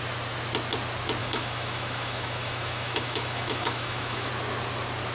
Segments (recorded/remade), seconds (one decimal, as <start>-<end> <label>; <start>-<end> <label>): 0.0-1.2 recorded; 1.2-4.3 remade; 4.3-5.1 recorded